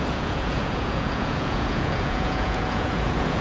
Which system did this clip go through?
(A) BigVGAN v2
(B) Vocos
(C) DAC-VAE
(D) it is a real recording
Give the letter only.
B